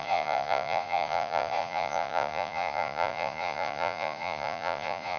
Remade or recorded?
remade